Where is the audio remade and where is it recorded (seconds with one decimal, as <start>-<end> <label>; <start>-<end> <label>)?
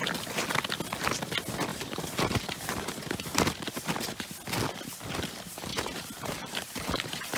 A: 0.0-1.7 recorded; 1.7-3.5 remade; 3.5-5.7 recorded; 5.7-7.4 remade